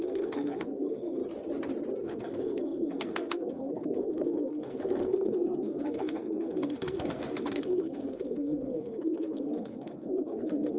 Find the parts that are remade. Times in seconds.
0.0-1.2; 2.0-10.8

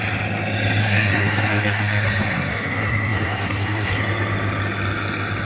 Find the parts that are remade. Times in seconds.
0.8-4.0

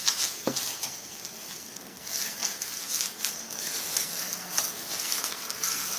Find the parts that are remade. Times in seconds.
0.0-6.0